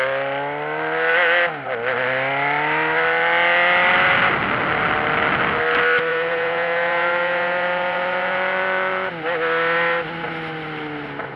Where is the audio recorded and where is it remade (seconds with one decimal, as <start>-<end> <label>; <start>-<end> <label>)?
0.0-6.1 recorded; 6.1-9.1 remade; 9.1-11.4 recorded